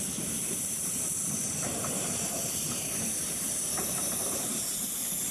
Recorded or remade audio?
remade